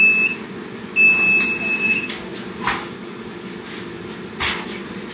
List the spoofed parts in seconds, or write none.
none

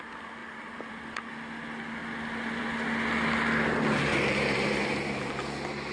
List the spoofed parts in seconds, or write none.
0.4-1.3 (vocoder, BigVGAN v2); 4.1-5.4

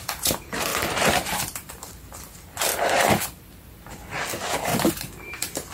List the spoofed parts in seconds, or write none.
0.7-1.9 (vocoder, BigVGAN v2); 2.7-3.2; 4.7-5.7

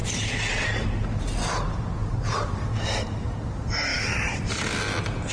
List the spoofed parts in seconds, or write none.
2.0-2.5 (vocoder, BigVGAN v2); 3.9-4.5